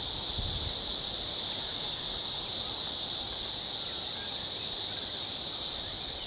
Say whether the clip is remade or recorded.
recorded